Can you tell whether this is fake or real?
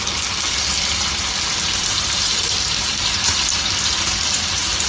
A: real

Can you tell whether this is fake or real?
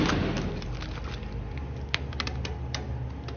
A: real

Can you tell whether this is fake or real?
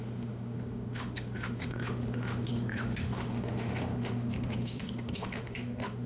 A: fake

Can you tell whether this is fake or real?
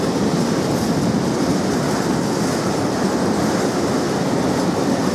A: real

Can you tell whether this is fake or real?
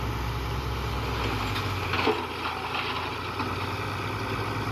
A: real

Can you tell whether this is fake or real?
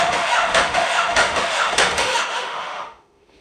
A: fake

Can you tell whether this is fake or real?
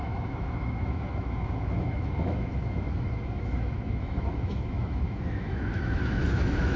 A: fake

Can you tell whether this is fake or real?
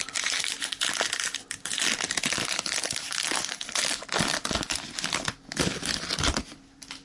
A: real